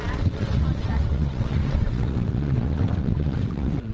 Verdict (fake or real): fake